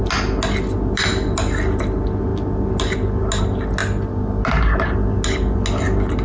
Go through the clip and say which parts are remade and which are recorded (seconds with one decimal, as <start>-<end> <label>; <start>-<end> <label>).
0.0-6.2 recorded